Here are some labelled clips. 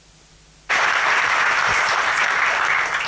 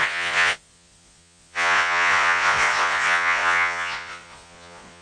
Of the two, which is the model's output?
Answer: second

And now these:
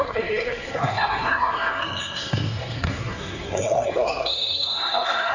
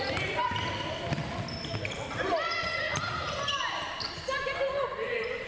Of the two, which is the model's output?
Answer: first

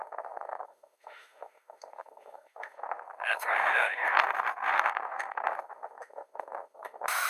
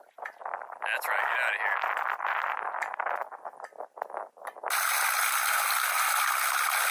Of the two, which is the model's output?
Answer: first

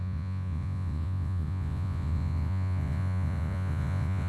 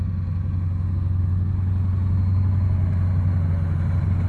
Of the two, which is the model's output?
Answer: first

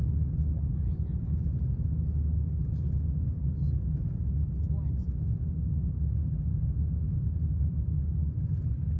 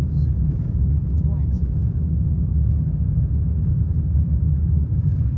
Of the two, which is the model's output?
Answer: second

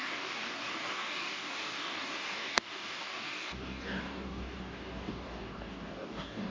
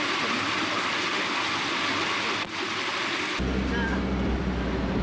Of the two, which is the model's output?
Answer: first